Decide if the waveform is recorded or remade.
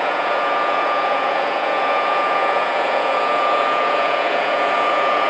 remade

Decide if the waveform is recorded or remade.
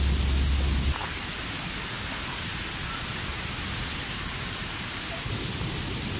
recorded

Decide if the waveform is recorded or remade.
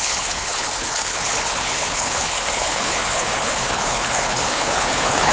remade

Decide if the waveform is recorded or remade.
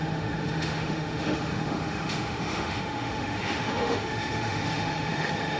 remade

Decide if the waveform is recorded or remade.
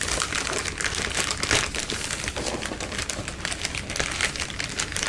recorded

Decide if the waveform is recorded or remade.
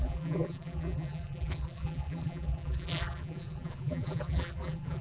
remade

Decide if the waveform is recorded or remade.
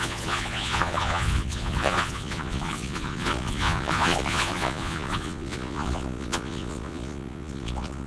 remade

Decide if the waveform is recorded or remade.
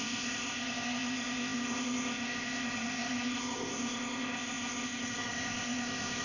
remade